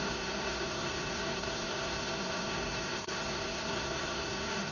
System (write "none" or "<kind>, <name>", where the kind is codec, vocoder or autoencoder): codec, SNAC